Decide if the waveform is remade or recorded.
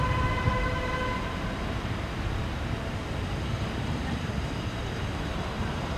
remade